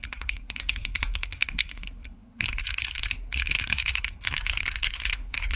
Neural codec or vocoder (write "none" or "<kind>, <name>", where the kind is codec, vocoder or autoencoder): codec, SNAC